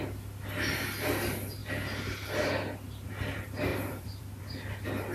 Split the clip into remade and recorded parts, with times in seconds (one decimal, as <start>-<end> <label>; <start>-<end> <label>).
0.0-3.7 recorded; 3.7-4.4 remade; 4.4-5.1 recorded